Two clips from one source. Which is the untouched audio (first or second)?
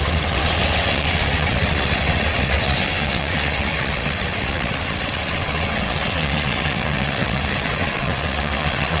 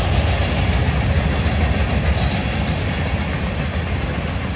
second